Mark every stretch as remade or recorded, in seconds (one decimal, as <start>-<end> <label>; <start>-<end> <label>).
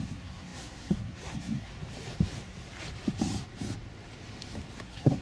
0.0-1.7 remade; 1.7-4.8 recorded; 4.8-5.2 remade